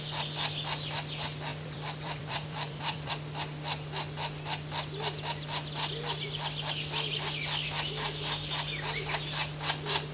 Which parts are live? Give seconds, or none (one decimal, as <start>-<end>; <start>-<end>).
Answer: 0.0-1.5; 3.1-10.1